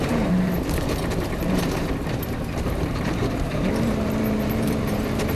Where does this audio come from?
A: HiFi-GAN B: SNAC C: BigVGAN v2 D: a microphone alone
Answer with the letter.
C